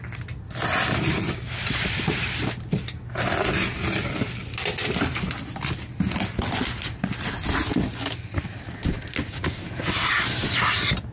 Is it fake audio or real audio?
real